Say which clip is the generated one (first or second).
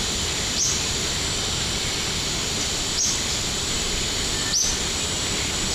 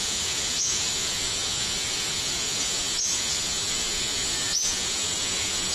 second